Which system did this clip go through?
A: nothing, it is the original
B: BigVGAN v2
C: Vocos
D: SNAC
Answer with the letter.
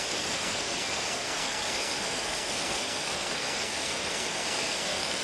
D